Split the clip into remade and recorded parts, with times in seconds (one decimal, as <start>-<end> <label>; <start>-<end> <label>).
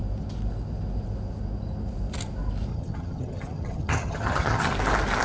0.0-2.7 recorded; 2.7-4.7 remade; 4.7-5.2 recorded